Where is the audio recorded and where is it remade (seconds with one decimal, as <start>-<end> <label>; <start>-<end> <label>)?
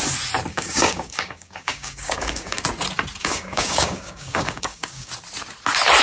0.0-0.5 recorded; 0.5-2.6 remade; 2.6-3.2 recorded; 3.2-5.1 remade; 5.1-6.0 recorded